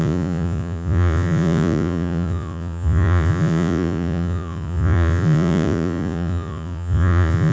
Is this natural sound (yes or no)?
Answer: no